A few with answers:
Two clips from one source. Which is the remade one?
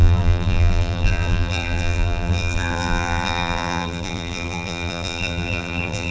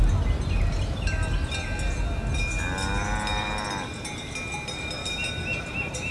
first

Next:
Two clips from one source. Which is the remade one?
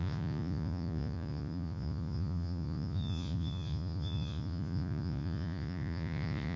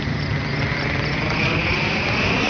first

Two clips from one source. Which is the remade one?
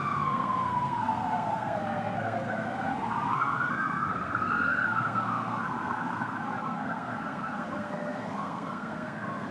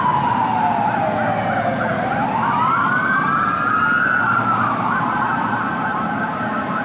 first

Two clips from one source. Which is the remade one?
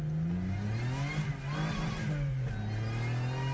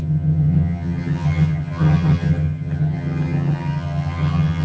second